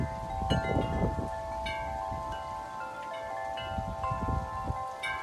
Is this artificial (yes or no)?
no